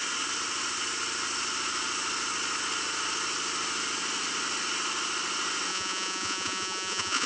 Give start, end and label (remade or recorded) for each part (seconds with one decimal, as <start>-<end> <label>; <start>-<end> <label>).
0.0-5.7 recorded; 5.7-7.3 remade